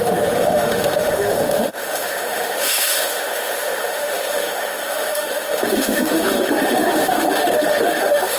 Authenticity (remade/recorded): remade